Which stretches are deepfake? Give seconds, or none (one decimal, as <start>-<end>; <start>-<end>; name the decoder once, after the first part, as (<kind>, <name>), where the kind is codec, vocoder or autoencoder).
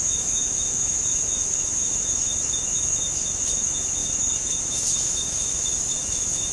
0.0-6.5 (autoencoder, DAC-VAE)